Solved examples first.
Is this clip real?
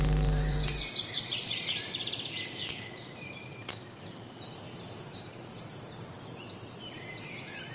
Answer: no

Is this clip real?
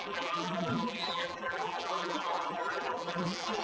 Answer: no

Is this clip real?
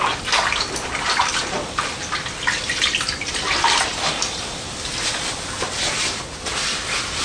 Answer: yes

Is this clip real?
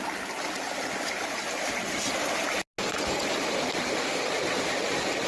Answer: yes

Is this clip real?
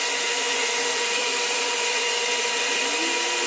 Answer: no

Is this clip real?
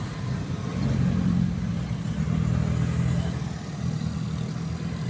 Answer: yes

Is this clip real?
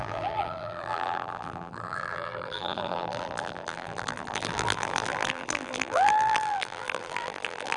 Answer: no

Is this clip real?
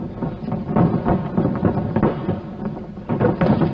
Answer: yes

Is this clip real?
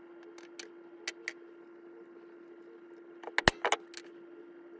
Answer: yes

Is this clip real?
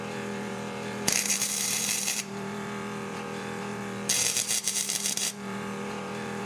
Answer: no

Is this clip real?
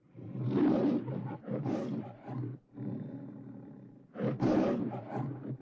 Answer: no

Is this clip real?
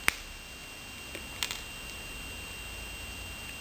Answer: yes